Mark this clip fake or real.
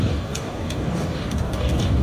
fake